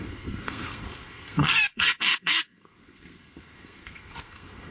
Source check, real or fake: fake